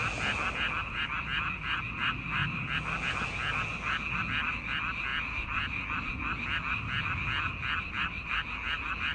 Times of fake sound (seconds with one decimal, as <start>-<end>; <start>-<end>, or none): none